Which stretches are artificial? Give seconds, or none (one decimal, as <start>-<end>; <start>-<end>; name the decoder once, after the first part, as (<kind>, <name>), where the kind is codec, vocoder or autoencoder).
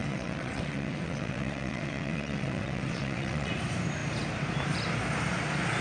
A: 0.0-3.5 (vocoder, WaveNeXt)